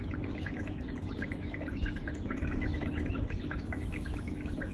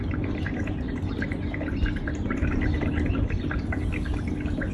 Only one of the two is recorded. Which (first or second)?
second